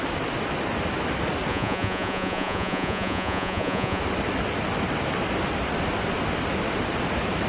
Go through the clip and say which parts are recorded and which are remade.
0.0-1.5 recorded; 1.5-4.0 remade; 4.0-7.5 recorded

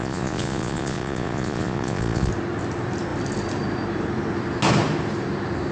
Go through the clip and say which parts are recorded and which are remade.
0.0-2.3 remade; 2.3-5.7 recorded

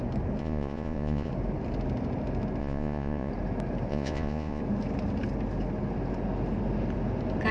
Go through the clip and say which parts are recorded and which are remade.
0.0-0.4 recorded; 0.4-1.3 remade; 1.3-2.6 recorded; 2.6-3.3 remade; 3.3-3.9 recorded; 3.9-4.6 remade; 4.6-7.5 recorded

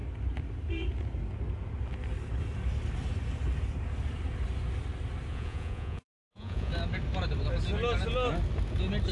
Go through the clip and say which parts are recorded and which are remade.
0.0-5.3 recorded; 5.3-6.7 remade; 6.7-9.1 recorded

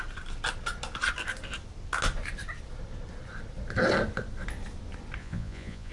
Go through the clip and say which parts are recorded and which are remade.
0.0-5.2 recorded; 5.2-5.9 remade

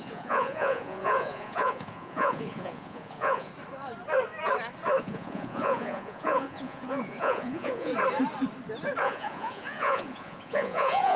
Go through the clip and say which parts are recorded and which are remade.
0.0-3.5 remade; 3.5-5.0 recorded; 5.0-7.9 remade; 7.9-9.0 recorded; 9.0-11.2 remade

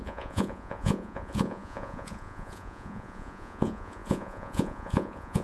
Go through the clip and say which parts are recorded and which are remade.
0.0-5.4 remade

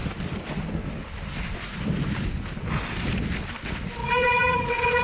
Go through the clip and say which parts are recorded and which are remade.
0.0-4.0 recorded; 4.0-5.0 remade